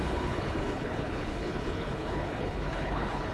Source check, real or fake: fake